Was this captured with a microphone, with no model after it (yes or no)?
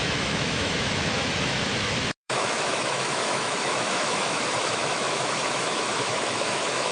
no